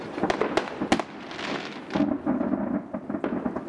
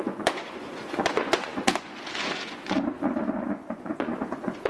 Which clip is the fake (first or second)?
second